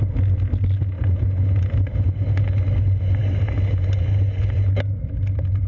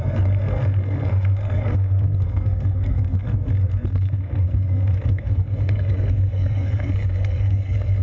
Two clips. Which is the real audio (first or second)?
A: first